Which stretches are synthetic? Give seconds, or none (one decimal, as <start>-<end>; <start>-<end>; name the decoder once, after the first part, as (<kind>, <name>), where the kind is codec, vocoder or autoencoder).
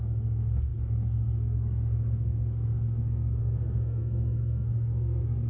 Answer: 0.0-5.5 (codec, SNAC)